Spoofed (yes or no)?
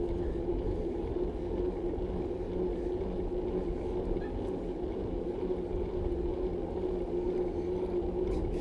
no